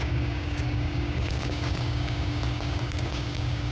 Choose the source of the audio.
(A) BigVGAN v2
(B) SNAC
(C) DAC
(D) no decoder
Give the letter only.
C